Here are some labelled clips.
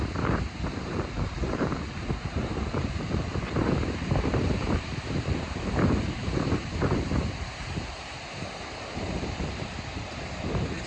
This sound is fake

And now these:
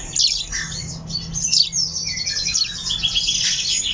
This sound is real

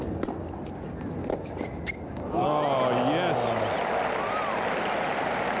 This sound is real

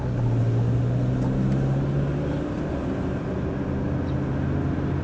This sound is real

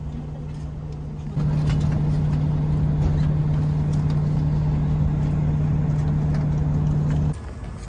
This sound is real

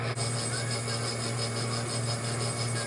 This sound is real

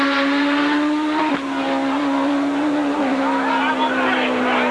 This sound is real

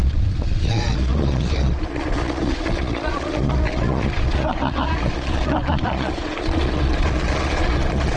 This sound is fake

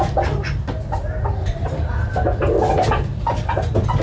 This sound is real